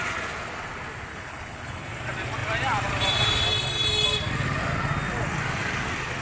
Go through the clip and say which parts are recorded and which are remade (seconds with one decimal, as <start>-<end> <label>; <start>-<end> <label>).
0.0-1.1 recorded; 1.1-1.9 remade; 1.9-6.2 recorded